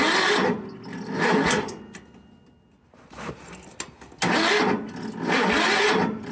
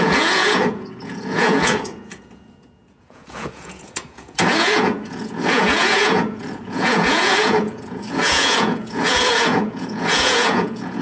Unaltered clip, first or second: first